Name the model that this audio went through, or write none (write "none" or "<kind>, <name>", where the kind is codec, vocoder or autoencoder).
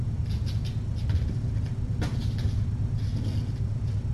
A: none